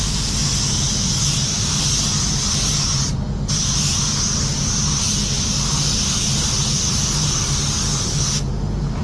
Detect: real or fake real